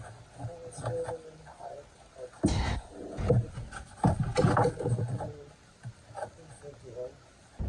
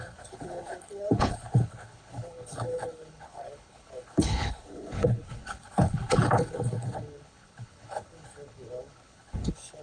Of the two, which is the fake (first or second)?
second